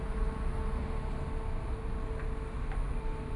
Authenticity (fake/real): real